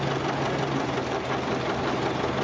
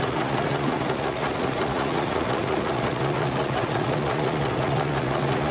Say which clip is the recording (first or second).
first